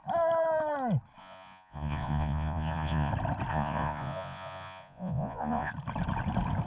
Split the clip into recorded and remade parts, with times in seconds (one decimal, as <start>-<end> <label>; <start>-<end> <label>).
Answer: 0.0-1.2 recorded; 1.2-3.1 remade; 3.1-3.5 recorded; 3.5-5.7 remade; 5.7-6.7 recorded